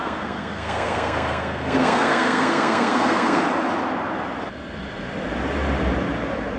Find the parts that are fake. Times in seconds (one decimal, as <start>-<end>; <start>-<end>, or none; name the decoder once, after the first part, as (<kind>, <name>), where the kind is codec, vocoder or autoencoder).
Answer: 0.0-3.4 (codec, SNAC)